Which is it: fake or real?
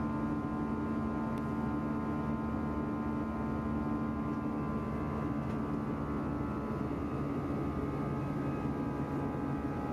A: real